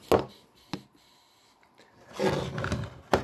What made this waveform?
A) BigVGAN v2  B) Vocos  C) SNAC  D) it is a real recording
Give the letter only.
D